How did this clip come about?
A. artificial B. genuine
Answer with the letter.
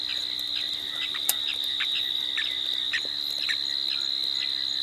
B